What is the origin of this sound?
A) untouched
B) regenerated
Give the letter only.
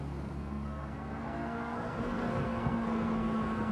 B